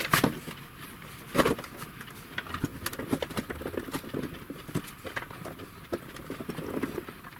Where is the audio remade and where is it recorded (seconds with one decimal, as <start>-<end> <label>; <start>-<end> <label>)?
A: 0.0-7.4 recorded